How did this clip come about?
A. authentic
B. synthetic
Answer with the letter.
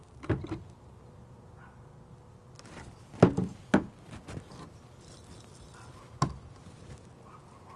A